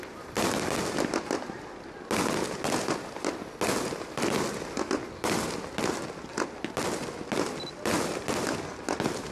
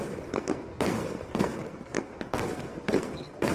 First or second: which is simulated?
second